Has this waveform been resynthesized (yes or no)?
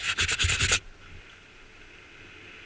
no